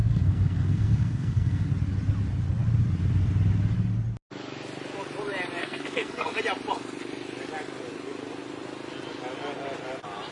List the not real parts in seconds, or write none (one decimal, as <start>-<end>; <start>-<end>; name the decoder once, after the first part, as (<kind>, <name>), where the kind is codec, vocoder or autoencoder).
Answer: 0.0-1.7 (codec, SNAC); 5.6-6.3